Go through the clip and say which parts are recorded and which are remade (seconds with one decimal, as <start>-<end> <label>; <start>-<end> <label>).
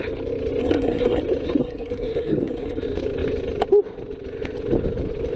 0.0-0.6 recorded; 0.6-1.2 remade; 1.2-1.6 recorded; 1.6-2.8 remade; 2.8-5.4 recorded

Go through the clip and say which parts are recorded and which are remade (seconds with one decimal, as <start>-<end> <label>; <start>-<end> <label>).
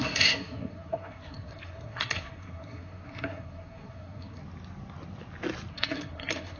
0.0-4.4 remade; 4.4-5.7 recorded; 5.7-6.6 remade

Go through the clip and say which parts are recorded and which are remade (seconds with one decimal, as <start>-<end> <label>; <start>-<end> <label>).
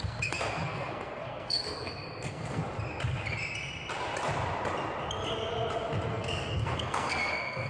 0.0-2.6 remade; 2.6-6.1 recorded; 6.1-7.7 remade